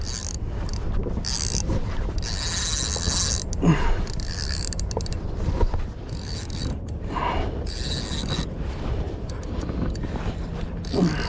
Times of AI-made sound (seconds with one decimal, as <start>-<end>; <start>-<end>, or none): none